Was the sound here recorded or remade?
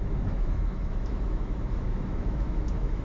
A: remade